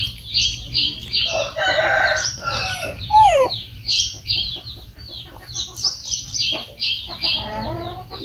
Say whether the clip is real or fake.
fake